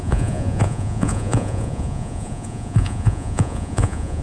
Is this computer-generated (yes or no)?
yes